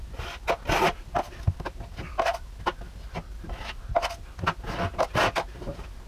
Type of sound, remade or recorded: recorded